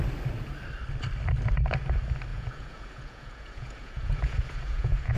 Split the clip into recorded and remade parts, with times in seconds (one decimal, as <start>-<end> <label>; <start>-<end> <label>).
0.0-2.3 recorded; 2.3-5.2 remade